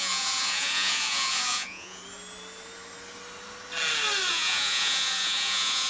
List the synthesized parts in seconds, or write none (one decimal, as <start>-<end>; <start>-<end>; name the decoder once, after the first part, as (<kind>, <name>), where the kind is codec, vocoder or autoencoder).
0.0-2.0 (vocoder, Vocos); 4.3-5.9